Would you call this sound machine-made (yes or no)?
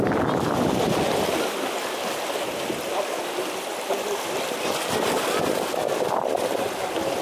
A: no